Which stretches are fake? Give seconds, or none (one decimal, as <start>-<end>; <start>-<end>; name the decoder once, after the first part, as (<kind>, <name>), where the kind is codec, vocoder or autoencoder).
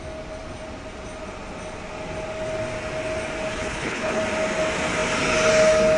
3.5-4.2 (codec, HILCodec)